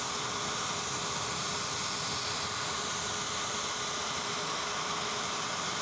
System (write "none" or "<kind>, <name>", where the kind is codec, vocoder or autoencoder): none